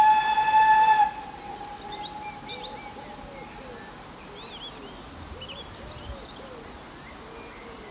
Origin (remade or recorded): recorded